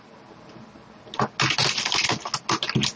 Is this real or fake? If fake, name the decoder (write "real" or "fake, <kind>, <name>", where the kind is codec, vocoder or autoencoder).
real